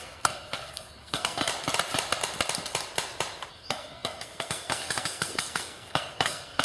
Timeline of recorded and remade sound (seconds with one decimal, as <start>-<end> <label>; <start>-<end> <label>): 0.0-1.5 remade; 1.5-3.5 recorded; 3.5-6.6 remade